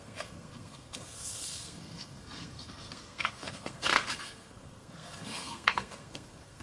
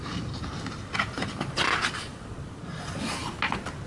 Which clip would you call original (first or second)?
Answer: second